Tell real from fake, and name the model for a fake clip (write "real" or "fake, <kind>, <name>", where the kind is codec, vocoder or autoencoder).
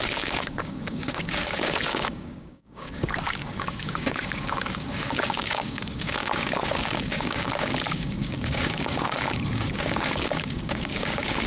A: fake, codec, DAC